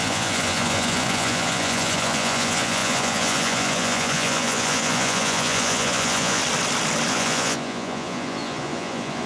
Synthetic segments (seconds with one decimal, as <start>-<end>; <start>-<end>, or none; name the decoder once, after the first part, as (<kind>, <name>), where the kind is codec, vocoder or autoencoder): 0.0-6.4 (vocoder, Vocos); 7.1-9.3